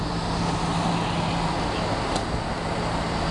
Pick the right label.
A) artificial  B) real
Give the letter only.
B